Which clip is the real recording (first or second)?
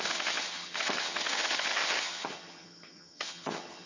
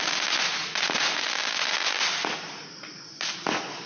second